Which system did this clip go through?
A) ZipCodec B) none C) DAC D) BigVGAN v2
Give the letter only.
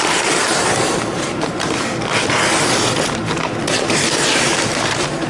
D